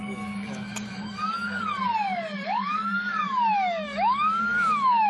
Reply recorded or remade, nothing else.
remade